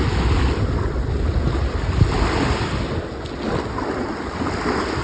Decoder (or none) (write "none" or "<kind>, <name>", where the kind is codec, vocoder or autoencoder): none